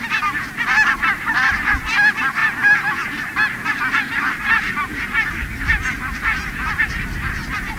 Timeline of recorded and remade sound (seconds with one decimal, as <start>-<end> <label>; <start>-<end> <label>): 0.0-7.8 recorded